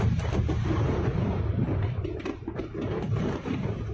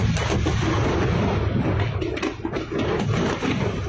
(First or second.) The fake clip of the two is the first